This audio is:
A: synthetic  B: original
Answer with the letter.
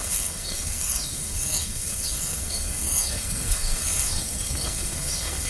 A